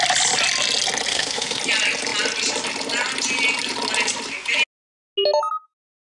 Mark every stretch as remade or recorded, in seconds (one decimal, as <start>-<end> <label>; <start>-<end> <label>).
0.0-1.1 recorded; 1.1-1.6 remade; 1.6-6.2 recorded